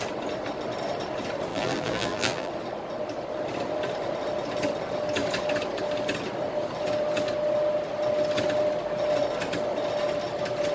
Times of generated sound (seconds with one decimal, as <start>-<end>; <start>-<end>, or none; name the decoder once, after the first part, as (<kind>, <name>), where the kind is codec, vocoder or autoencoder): 1.5-2.5 (vocoder, BigVGAN v2)